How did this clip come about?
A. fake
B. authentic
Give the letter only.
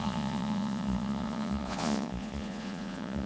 A